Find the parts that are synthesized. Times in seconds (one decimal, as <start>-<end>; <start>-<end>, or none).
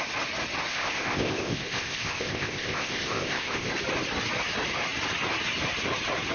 0.7-3.7